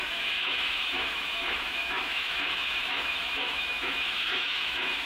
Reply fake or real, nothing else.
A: fake